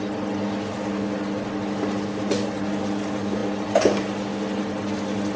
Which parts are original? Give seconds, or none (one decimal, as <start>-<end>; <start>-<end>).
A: 0.0-5.4